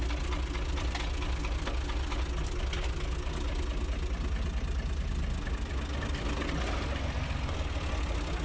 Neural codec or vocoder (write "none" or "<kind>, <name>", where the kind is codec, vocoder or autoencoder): none